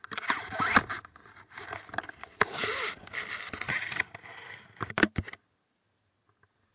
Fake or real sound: real